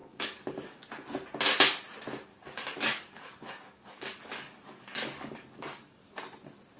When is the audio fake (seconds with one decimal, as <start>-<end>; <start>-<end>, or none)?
0.0-0.9; 2.3-6.1